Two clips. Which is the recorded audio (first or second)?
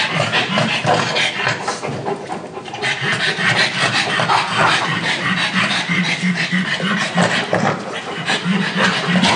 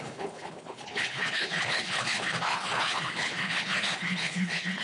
first